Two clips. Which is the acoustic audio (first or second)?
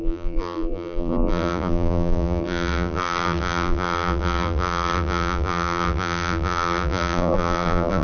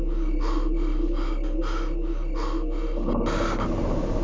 second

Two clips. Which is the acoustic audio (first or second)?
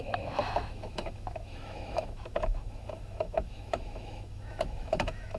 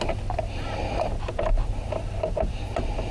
second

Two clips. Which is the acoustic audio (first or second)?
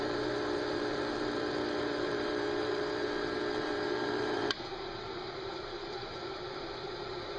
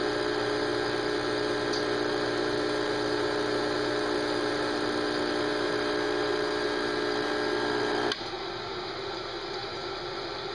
second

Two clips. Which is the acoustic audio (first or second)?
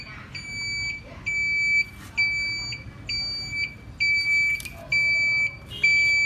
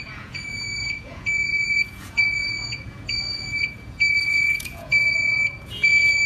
first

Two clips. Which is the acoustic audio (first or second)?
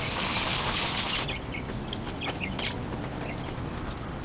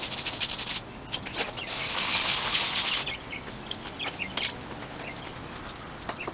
second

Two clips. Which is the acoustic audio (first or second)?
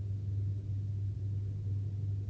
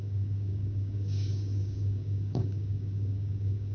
first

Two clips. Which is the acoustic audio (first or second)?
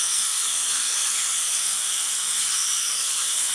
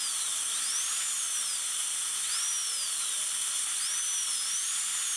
second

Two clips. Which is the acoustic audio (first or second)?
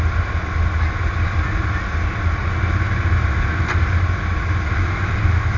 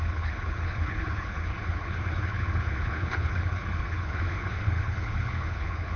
first